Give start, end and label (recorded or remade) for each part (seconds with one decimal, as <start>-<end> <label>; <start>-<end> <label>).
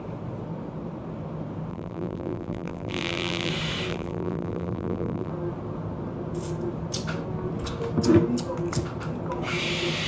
0.0-1.7 recorded; 1.7-3.5 remade; 3.5-3.9 recorded; 3.9-5.3 remade; 5.3-10.1 recorded